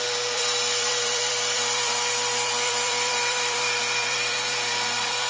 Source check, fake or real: fake